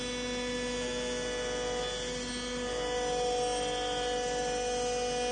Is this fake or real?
real